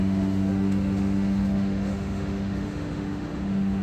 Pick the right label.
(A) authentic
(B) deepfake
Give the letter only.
B